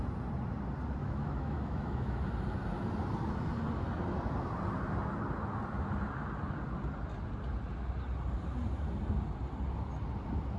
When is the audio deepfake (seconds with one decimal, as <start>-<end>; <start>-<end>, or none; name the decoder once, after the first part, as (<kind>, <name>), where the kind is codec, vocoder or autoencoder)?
1.0-2.2 (autoencoder, DAC-VAE)